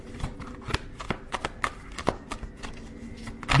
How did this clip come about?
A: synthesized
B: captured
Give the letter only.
B